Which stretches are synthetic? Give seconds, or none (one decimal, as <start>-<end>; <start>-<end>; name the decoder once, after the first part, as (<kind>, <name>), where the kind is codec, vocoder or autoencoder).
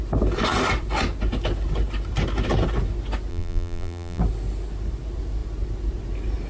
3.3-4.2 (vocoder, BigVGAN v2)